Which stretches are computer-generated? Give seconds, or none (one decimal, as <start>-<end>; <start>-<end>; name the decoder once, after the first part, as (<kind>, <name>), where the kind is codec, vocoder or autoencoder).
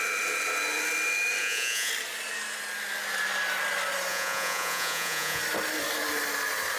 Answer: 1.4-1.9 (vocoder, Vocos); 4.1-5.4